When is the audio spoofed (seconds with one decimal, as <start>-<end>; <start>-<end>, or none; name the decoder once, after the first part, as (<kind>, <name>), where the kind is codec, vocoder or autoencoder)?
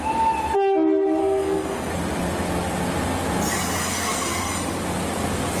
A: 1.2-1.9 (codec, SNAC); 3.8-4.5